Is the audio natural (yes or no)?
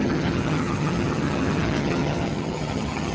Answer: no